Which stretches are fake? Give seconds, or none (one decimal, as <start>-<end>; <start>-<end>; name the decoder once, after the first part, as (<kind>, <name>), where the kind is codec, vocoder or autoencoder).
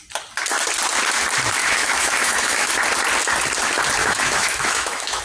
1.6-2.7 (autoencoder, DAC-VAE); 4.0-5.2